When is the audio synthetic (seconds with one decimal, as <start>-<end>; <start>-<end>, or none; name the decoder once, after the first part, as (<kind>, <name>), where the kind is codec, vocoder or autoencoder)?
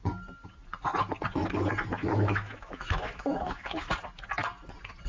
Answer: 2.0-3.9 (autoencoder, DAC-VAE)